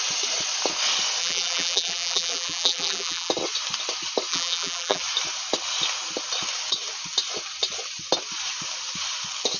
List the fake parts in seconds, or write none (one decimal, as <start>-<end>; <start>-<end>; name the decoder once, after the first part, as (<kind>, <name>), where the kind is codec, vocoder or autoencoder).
1.2-3.3 (vocoder, BigVGAN v2); 4.3-5.0